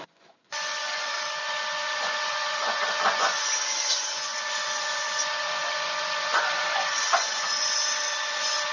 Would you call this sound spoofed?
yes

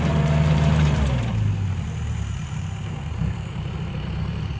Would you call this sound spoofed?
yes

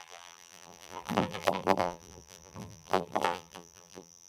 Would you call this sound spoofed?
yes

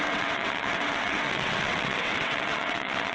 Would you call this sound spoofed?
yes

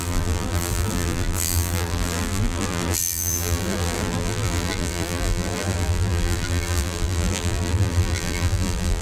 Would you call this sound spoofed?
yes